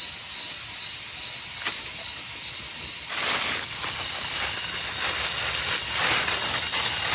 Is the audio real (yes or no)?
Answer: yes